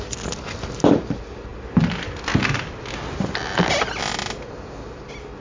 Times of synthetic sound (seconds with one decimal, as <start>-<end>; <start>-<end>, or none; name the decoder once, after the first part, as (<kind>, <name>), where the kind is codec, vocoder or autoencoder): none